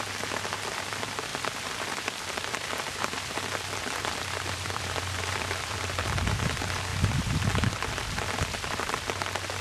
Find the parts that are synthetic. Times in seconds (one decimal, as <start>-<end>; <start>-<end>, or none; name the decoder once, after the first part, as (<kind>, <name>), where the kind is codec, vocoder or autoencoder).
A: 1.3-6.0 (vocoder, BigVGAN v2); 6.9-7.9